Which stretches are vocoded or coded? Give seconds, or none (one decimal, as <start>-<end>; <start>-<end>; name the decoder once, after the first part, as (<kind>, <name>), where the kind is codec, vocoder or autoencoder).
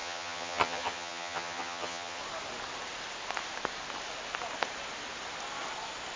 0.0-2.2 (vocoder, HiFi-GAN)